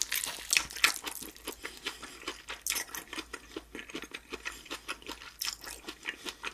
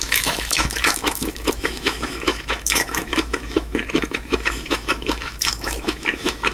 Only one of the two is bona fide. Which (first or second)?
first